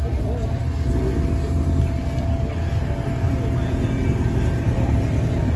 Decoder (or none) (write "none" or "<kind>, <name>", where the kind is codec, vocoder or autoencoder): none